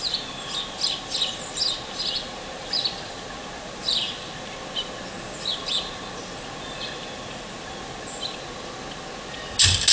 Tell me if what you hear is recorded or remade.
recorded